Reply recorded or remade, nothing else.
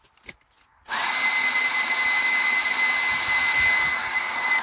recorded